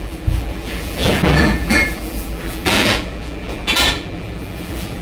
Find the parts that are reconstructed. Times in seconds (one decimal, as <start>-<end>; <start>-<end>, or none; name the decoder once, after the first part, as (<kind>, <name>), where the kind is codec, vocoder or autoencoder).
0.0-5.0 (vocoder, BigVGAN v2)